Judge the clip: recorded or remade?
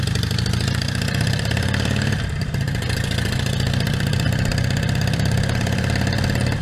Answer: remade